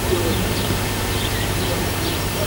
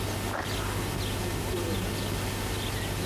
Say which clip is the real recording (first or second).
second